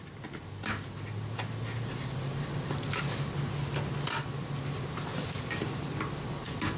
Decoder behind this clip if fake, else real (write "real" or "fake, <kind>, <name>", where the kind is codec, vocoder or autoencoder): real